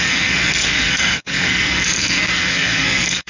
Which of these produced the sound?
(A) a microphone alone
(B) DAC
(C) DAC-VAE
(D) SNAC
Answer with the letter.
D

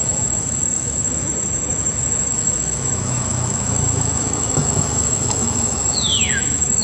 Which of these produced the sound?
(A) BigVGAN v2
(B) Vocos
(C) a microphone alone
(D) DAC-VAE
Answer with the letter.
D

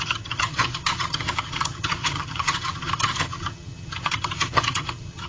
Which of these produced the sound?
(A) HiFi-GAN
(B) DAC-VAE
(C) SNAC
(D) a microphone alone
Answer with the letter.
A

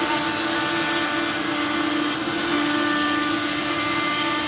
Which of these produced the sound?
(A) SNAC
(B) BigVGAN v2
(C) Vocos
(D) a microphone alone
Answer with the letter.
D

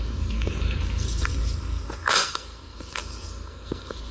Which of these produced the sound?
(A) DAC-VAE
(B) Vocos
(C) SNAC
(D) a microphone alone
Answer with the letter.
C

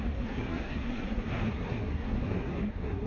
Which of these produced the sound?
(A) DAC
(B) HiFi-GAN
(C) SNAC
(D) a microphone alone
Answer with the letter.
C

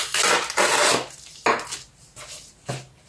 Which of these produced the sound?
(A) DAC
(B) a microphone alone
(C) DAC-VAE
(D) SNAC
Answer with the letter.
B